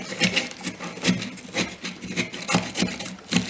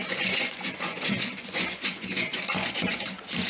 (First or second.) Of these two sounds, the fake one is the second